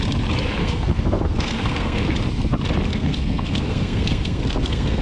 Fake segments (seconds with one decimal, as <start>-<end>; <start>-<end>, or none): 0.6-2.1; 2.9-5.0